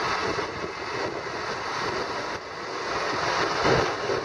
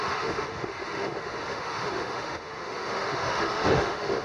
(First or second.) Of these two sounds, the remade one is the second